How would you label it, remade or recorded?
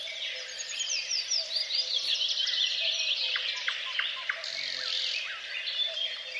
recorded